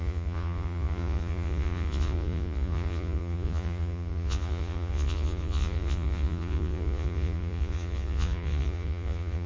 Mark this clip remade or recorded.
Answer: remade